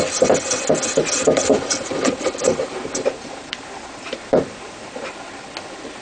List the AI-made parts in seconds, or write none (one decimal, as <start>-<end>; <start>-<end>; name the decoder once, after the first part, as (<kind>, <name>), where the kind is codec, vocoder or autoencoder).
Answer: 1.2-4.8 (vocoder, BigVGAN v2)